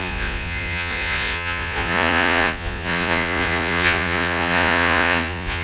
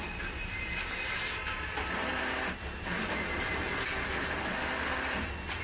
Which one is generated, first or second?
first